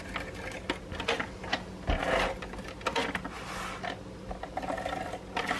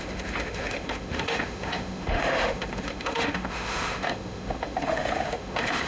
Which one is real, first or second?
first